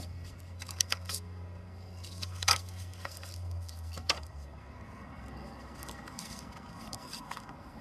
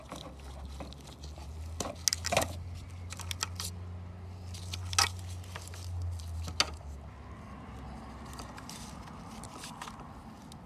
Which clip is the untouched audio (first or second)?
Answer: second